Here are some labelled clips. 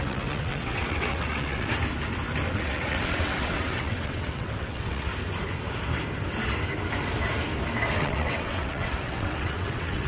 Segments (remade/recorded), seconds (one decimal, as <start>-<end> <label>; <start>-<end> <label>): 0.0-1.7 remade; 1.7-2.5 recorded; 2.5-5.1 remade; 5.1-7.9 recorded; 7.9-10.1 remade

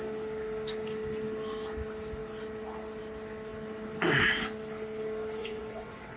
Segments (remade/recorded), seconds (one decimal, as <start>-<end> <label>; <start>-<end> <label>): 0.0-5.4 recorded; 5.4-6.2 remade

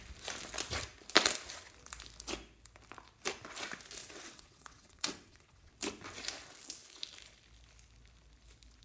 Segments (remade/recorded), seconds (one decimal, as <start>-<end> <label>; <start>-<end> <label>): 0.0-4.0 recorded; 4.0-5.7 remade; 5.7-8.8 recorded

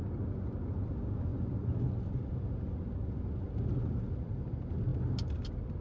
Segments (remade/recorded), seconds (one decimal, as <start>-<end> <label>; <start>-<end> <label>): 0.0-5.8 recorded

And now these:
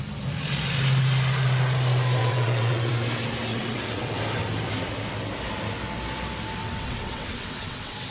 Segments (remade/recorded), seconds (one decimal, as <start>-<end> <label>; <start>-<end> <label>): 0.0-2.2 recorded; 2.2-2.9 remade; 2.9-3.5 recorded; 3.5-4.2 remade; 4.2-6.6 recorded; 6.6-8.1 remade